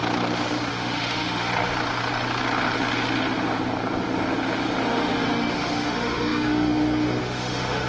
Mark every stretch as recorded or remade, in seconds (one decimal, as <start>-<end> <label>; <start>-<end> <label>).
0.0-0.7 recorded; 0.7-1.5 remade; 1.5-4.8 recorded; 4.8-7.9 remade

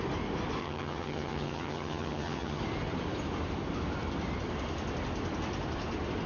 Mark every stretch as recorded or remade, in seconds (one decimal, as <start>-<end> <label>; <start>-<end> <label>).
0.0-0.6 recorded; 0.6-2.6 remade; 2.6-6.3 recorded

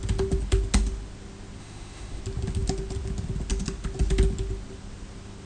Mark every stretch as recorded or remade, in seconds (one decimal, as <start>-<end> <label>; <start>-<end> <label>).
0.0-1.6 recorded; 1.6-2.2 remade; 2.2-5.5 recorded